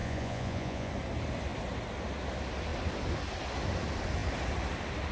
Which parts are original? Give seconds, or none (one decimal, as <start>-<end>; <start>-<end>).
0.9-5.1